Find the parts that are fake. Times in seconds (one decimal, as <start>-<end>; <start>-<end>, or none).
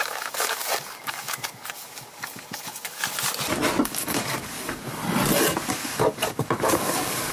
0.0-3.0; 3.8-5.0; 5.7-7.3